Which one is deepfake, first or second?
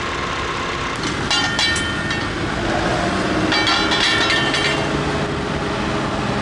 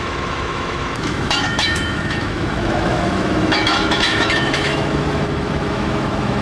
second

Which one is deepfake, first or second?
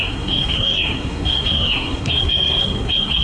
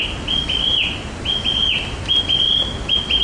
first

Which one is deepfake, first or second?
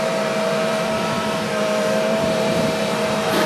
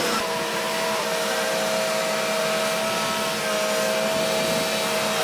first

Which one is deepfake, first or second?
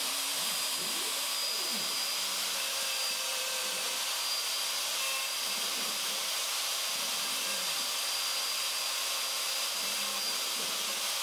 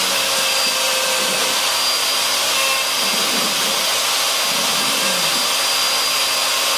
first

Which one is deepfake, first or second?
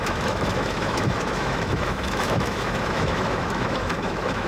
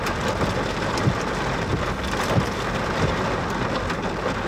first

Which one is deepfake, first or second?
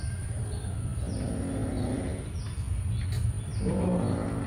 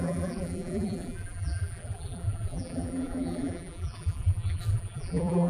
second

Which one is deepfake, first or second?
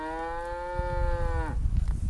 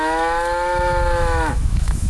second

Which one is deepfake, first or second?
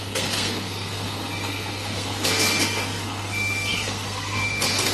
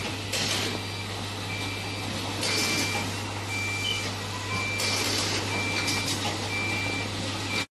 first